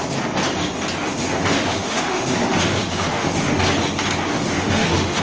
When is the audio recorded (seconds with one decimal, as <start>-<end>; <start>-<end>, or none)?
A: 0.0-1.4; 3.6-4.3